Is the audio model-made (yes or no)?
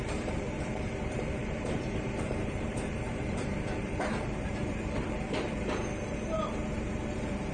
yes